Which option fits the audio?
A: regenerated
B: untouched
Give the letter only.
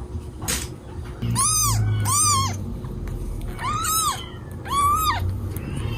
B